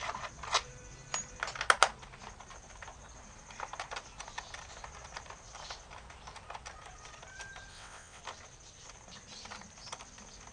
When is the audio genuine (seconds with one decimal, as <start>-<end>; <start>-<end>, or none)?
0.0-7.7; 8.2-10.5